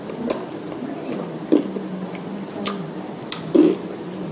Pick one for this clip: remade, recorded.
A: remade